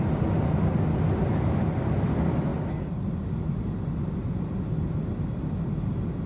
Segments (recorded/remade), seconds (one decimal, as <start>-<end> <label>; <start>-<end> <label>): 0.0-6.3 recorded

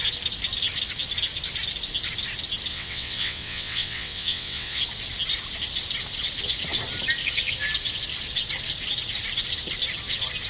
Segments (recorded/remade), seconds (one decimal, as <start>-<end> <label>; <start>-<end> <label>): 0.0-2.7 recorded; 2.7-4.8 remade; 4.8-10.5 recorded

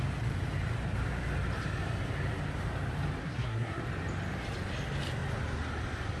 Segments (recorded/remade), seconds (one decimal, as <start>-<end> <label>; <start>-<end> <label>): 0.0-3.2 recorded; 3.2-3.8 remade; 3.8-6.2 recorded